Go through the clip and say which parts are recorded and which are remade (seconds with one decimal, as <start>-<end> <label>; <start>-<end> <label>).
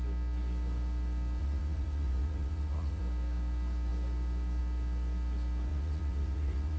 0.0-1.4 recorded; 1.4-3.0 remade; 3.0-5.7 recorded; 5.7-6.8 remade